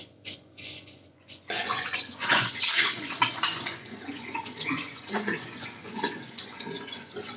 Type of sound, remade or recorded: remade